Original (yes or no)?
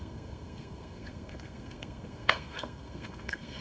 no